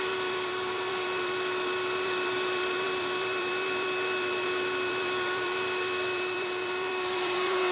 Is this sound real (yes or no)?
no